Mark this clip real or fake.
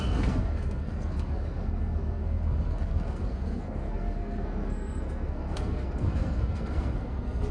fake